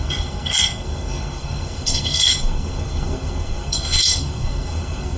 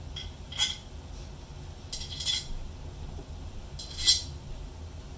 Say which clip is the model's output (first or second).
first